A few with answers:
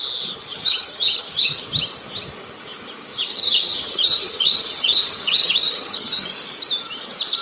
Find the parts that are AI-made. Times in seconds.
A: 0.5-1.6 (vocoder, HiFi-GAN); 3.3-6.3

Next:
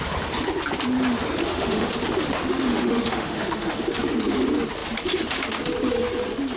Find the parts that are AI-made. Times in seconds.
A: 1.4-1.9 (autoencoder, DAC-VAE); 2.5-3.9

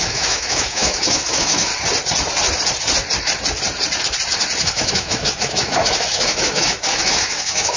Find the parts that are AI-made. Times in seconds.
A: 0.0-1.7 (autoencoder, DAC-VAE); 4.6-7.8

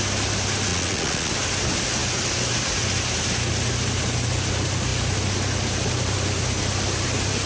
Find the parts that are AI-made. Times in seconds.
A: 0.7-1.3 (vocoder, Vocos)

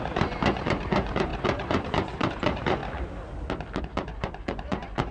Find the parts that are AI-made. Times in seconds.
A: 0.0-2.8 (vocoder, Vocos); 3.8-5.1

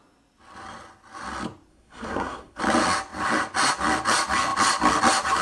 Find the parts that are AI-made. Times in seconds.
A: 1.7-2.6 (codec, SNAC)

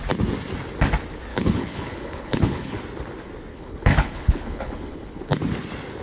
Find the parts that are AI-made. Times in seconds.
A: 1.3-2.8 (codec, HILCodec); 3.5-5.2